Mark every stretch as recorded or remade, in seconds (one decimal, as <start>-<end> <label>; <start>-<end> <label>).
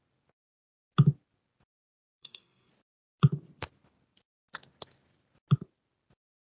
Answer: 0.0-2.0 recorded; 2.0-2.7 remade; 2.7-6.5 recorded